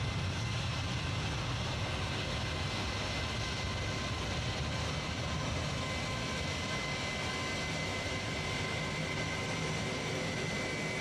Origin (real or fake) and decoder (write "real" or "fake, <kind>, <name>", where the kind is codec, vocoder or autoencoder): real